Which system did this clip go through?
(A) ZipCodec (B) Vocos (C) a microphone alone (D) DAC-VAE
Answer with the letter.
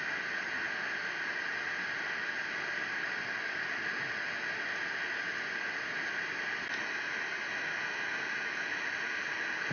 C